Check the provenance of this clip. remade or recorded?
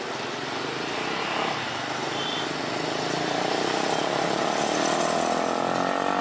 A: recorded